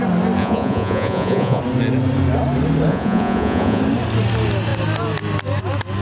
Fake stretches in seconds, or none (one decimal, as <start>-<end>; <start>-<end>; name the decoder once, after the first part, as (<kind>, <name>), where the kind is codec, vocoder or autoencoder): 0.4-1.6 (vocoder, Vocos); 2.9-3.8